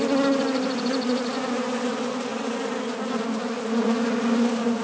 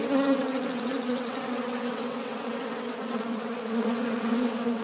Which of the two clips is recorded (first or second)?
first